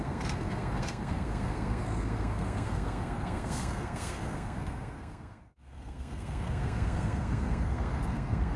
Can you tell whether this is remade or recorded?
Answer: remade